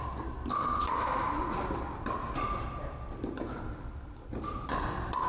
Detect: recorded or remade recorded